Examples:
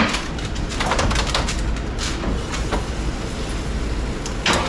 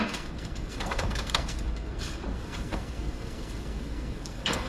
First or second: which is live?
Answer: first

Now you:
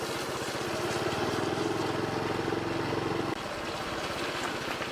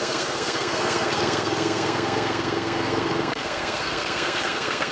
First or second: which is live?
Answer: first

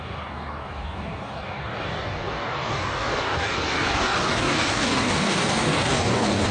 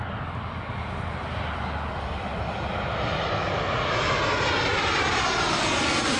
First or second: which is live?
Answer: second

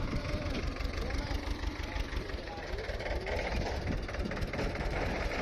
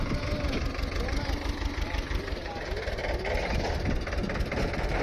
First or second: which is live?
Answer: second